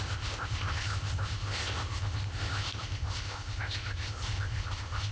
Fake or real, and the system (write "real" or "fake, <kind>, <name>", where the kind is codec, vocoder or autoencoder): fake, codec, ZipCodec